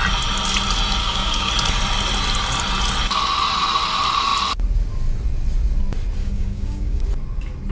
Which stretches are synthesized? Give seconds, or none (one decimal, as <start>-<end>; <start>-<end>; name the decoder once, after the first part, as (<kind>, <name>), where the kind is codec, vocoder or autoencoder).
1.0-1.5 (codec, DAC); 6.2-7.1